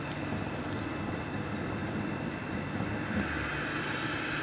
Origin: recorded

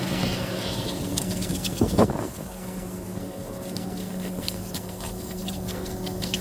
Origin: remade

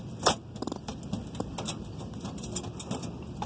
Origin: recorded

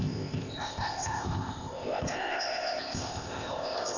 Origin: remade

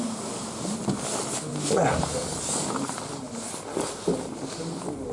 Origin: recorded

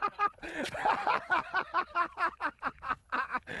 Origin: remade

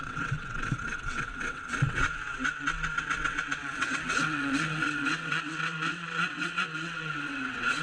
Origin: remade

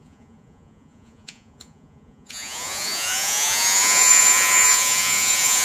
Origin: remade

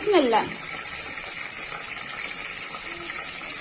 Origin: recorded